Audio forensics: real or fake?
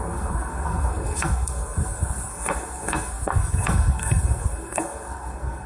fake